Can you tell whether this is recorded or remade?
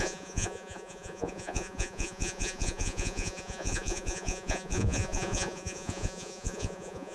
remade